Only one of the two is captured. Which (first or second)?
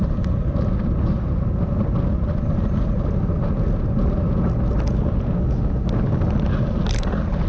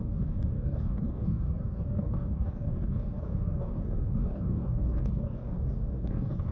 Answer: first